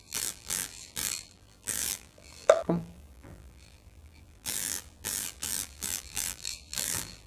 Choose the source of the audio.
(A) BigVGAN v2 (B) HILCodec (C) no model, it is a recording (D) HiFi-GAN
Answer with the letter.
A